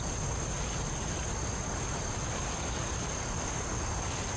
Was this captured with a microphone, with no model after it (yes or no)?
yes